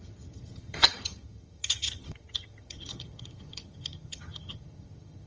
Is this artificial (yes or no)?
yes